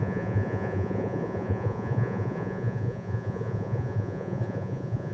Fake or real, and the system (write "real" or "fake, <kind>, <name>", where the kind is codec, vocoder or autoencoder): fake, vocoder, Vocos